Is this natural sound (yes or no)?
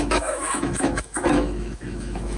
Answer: no